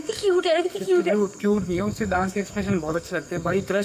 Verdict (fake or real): fake